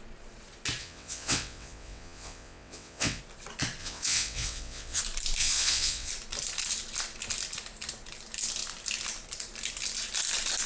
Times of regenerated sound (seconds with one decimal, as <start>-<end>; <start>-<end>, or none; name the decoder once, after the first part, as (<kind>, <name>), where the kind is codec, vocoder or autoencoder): 0.8-3.2 (vocoder, WaveNeXt); 3.8-5.0; 5.4-6.1